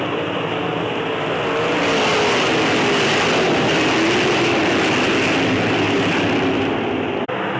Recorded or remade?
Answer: recorded